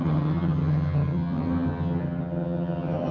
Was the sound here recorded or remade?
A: remade